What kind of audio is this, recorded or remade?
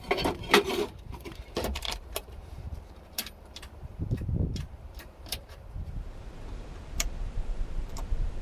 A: remade